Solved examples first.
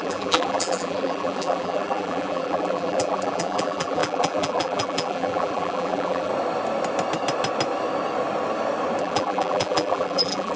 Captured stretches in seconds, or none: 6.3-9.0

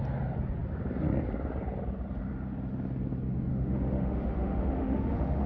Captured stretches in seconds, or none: 0.0-3.5

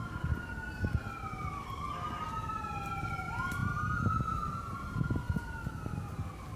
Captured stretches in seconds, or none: 0.0-6.6

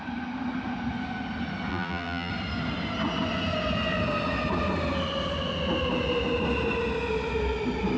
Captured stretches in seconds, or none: 0.0-1.7; 2.3-8.0